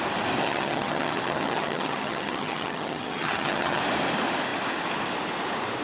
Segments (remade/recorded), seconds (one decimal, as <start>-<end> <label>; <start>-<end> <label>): 0.0-0.4 recorded; 0.4-3.8 remade; 3.8-5.8 recorded